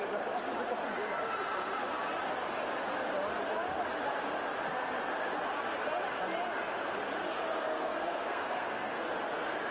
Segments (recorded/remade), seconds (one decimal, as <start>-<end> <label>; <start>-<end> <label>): 0.0-7.7 recorded; 7.7-9.0 remade; 9.0-9.7 recorded